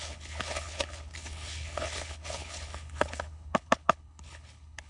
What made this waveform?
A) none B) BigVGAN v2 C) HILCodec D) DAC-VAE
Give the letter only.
C